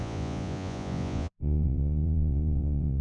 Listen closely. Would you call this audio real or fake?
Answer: fake